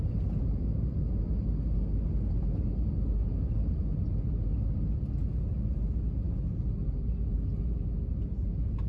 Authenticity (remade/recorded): recorded